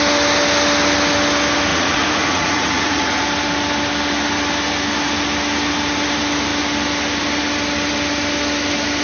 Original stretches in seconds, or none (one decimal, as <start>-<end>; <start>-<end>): 0.0-1.7; 3.2-9.0